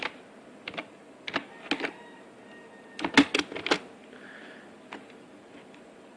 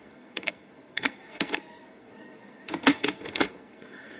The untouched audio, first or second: first